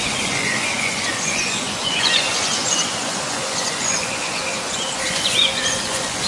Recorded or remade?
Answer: remade